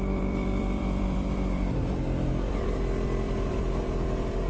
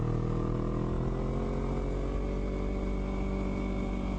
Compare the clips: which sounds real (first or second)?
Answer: second